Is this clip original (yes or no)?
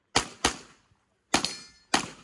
yes